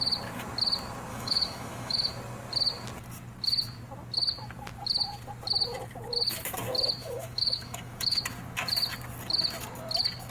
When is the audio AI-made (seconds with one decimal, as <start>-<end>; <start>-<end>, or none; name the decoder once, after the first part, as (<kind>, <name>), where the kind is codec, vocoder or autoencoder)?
1.1-2.1 (autoencoder, DAC-VAE); 7.0-8.2

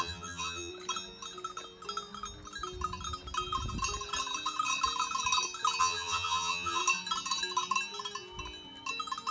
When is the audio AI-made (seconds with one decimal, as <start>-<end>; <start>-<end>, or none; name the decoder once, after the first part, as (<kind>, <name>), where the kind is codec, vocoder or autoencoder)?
0.0-0.7 (vocoder, HiFi-GAN); 5.8-6.8

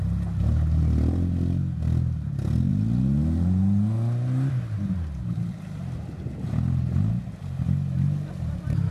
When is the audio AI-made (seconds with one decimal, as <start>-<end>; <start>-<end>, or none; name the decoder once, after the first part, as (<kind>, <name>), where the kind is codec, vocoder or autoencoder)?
none

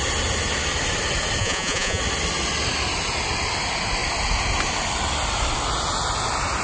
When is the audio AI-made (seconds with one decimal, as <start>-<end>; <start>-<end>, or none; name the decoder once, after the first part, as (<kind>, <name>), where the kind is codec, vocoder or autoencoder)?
1.4-2.0 (vocoder, Vocos)